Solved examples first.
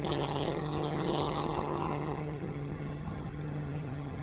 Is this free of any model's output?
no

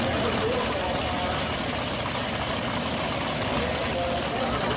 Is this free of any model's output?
yes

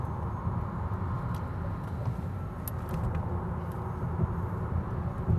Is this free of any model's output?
yes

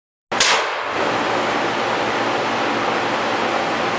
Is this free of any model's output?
yes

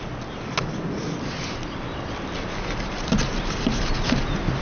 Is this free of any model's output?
yes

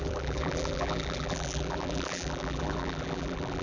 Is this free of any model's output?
no